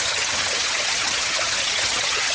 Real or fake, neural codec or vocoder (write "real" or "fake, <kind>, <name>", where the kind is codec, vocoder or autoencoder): fake, vocoder, HiFi-GAN